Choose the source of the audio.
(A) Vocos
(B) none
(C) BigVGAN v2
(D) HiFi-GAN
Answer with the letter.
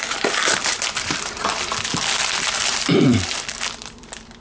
C